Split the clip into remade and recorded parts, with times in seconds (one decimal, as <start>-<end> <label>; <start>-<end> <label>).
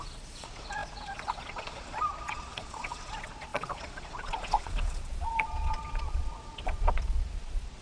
0.0-7.8 remade